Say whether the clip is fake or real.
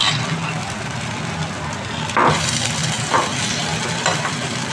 fake